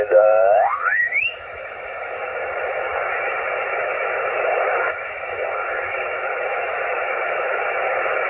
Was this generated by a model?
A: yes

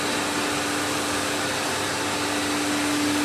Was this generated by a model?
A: no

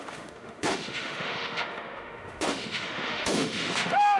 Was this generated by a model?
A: yes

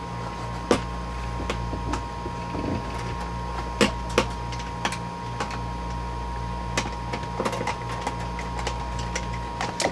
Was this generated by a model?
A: no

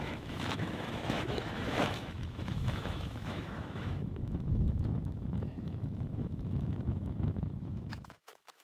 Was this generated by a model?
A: yes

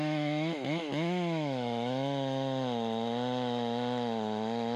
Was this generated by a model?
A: yes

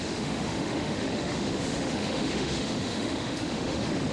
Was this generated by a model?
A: yes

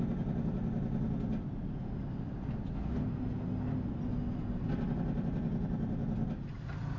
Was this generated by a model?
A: no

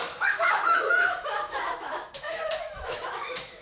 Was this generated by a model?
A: yes